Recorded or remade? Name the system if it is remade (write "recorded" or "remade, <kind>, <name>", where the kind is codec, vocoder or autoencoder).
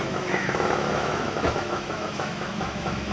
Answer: remade, autoencoder, DAC-VAE